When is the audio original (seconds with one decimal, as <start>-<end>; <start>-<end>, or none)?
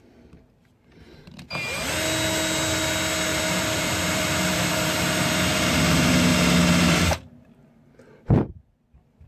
0.0-3.3; 4.7-9.3